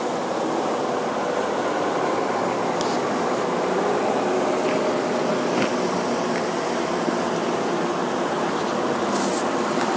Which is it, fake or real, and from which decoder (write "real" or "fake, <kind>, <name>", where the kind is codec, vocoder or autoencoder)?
real